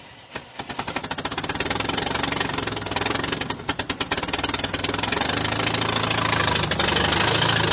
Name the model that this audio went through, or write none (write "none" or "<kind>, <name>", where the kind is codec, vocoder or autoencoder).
none